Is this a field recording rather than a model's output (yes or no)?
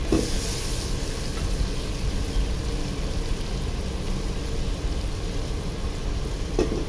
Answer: yes